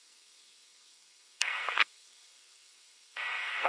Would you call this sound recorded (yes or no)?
no